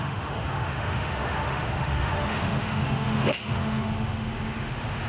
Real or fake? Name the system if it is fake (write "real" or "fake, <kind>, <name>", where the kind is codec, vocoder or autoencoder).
fake, autoencoder, DAC-VAE